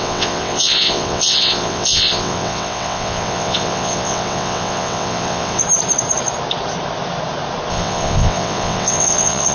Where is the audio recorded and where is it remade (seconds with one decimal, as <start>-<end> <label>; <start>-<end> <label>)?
0.0-5.6 remade; 5.6-7.7 recorded; 7.7-9.5 remade